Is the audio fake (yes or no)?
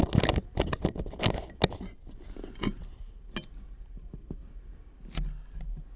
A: no